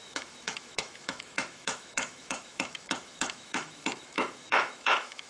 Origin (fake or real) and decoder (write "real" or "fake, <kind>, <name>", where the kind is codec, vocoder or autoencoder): fake, autoencoder, DAC-VAE